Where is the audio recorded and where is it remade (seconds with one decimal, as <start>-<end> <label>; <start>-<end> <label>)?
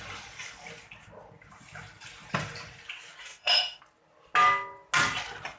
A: 0.0-3.2 recorded; 3.2-3.8 remade; 3.8-5.6 recorded